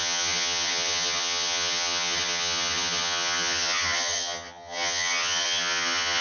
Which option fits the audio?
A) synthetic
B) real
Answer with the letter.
A